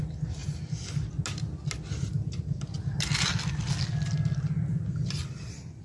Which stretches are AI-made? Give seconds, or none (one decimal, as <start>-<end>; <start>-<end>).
none

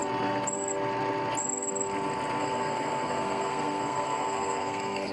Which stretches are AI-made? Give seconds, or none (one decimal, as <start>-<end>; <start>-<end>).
2.4-5.1

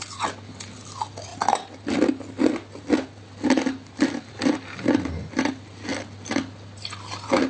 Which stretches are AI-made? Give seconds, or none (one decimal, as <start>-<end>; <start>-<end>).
none